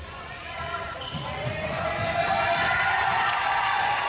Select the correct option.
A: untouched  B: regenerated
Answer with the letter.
B